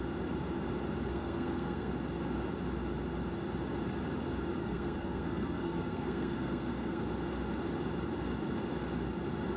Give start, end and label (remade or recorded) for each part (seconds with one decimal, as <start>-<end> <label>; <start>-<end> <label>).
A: 0.0-1.1 recorded; 1.1-1.9 remade; 1.9-4.6 recorded; 4.6-7.0 remade; 7.0-9.6 recorded